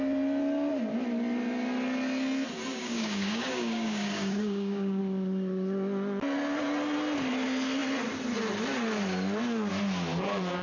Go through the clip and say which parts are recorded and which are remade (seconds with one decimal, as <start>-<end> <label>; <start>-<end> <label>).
0.0-2.7 recorded; 2.7-5.0 remade; 5.0-10.6 recorded